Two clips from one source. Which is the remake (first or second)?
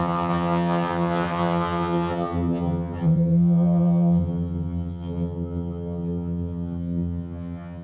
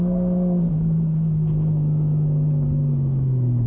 first